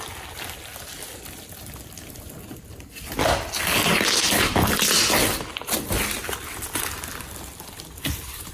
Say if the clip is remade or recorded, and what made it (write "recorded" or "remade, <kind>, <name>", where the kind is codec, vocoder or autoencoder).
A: recorded